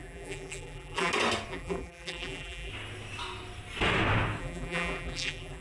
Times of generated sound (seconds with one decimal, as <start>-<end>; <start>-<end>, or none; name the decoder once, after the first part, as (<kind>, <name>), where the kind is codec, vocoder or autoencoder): 0.0-1.1 (vocoder, BigVGAN v2); 1.5-2.7; 4.4-5.6